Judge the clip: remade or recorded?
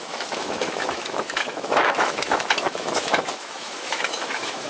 remade